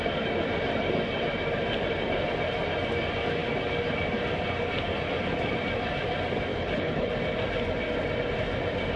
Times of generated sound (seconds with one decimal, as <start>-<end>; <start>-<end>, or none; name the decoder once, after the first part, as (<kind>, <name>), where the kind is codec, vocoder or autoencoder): 6.5-7.1 (codec, HILCodec)